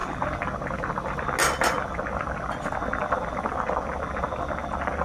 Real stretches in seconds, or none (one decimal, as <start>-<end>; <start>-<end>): 0.0-5.0